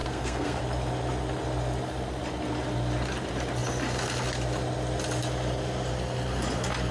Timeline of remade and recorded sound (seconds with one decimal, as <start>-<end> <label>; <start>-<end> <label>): 0.0-0.6 remade; 0.6-6.9 recorded